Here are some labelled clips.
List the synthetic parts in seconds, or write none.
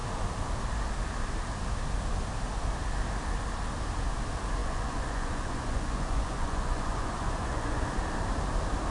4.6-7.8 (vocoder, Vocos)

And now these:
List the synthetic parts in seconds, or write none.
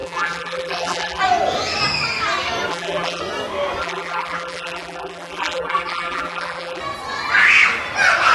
0.0-1.2 (vocoder, BigVGAN v2); 2.7-3.2; 3.8-6.8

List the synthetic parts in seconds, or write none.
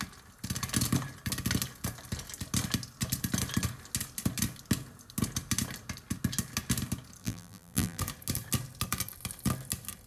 7.2-8.0 (vocoder, BigVGAN v2)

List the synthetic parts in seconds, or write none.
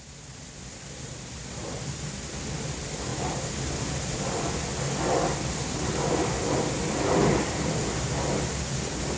none